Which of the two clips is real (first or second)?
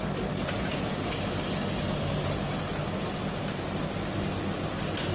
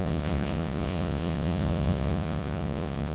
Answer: first